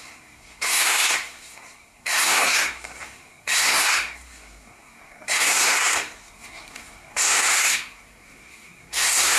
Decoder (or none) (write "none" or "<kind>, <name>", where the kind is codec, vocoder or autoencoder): codec, SNAC